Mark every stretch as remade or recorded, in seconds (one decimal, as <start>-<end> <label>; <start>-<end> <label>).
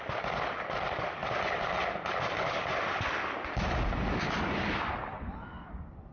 0.0-6.1 remade